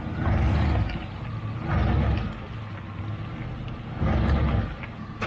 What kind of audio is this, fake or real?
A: real